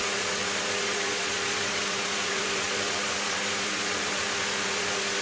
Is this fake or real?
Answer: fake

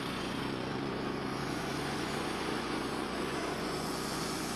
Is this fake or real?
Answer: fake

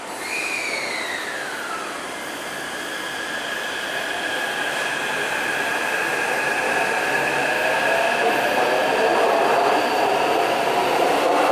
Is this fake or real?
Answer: real